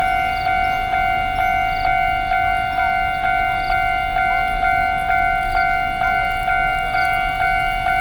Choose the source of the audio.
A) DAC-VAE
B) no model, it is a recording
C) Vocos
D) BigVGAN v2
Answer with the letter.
B